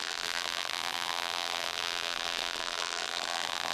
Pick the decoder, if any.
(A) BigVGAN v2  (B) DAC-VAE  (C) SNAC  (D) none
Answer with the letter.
A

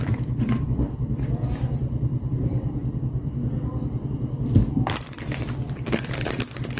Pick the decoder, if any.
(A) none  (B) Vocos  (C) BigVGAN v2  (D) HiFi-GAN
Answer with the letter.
C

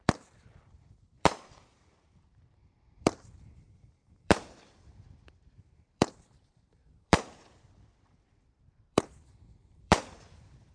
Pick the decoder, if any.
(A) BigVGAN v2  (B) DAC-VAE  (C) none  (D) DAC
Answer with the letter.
A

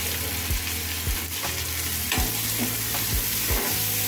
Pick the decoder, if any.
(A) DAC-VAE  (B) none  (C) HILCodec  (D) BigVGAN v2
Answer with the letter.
B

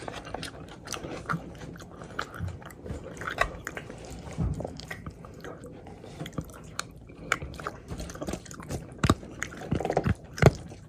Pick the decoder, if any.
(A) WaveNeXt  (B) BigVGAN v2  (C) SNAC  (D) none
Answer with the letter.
B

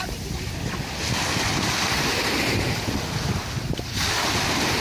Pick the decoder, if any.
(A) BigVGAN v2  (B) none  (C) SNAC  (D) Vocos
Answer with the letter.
B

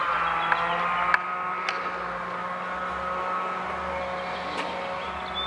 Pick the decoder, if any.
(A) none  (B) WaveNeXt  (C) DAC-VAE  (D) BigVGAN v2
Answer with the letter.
A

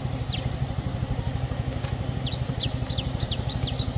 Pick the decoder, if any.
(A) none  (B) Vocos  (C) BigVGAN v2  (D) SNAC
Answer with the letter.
A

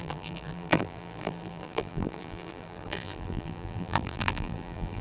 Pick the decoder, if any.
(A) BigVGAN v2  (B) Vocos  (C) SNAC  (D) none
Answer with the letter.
A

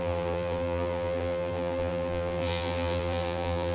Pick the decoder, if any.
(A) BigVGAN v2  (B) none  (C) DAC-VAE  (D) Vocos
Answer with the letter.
A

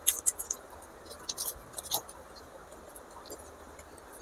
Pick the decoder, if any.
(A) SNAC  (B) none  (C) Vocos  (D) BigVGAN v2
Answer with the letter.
B